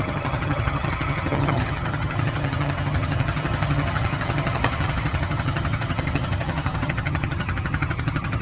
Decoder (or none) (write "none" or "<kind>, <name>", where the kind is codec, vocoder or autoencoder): vocoder, HiFi-GAN